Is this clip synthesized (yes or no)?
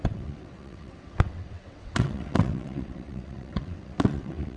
yes